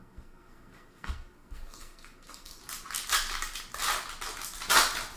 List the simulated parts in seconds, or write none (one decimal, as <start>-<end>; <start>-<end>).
0.0-2.6